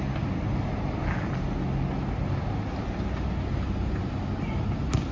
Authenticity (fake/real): real